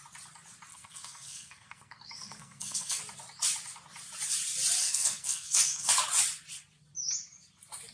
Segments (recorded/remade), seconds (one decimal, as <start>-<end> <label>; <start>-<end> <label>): 0.0-0.7 recorded; 0.7-3.0 remade; 3.0-4.8 recorded; 4.8-5.9 remade; 5.9-7.9 recorded